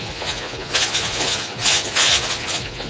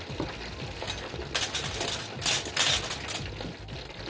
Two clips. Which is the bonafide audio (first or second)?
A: second